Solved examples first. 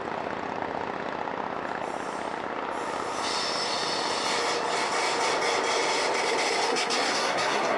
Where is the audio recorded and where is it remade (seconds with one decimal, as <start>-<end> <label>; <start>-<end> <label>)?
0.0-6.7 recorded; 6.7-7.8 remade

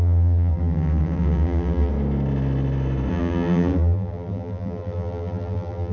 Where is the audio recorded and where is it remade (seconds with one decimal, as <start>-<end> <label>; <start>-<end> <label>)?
0.0-1.9 remade; 1.9-3.1 recorded; 3.1-5.9 remade

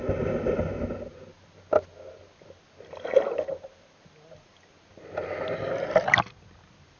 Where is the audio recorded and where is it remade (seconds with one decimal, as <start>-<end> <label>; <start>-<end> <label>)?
0.0-7.0 recorded

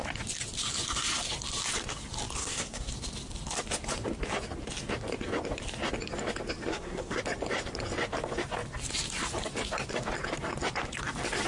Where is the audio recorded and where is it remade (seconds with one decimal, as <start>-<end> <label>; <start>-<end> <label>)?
0.0-2.4 recorded; 2.4-2.9 remade; 2.9-6.7 recorded; 6.7-7.2 remade; 7.2-11.5 recorded

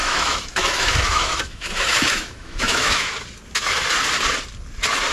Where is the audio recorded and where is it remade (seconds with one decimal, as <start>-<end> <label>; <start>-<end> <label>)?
0.0-3.1 remade; 3.1-5.1 recorded

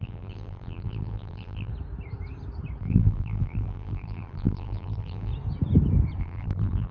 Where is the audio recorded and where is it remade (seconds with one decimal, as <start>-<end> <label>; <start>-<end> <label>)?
0.0-1.7 remade; 1.7-2.8 recorded; 2.8-5.3 remade; 5.3-6.2 recorded; 6.2-6.9 remade